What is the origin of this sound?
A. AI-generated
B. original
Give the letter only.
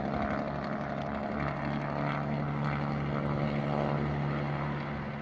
B